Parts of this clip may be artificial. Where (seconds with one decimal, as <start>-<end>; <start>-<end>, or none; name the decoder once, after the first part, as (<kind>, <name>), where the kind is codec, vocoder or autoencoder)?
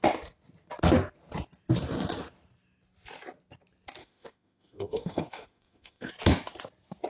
4.0-6.1 (autoencoder, DAC-VAE)